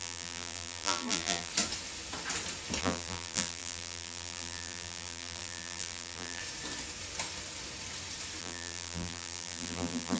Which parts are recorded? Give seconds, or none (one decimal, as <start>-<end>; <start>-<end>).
1.5-2.8; 6.4-8.4